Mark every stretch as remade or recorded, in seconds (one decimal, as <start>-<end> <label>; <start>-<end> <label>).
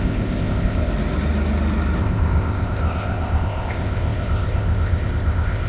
0.0-0.9 remade; 0.9-2.0 recorded; 2.0-5.7 remade